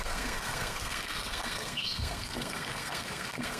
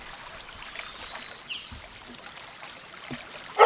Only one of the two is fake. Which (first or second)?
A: first